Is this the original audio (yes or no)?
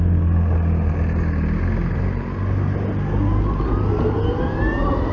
yes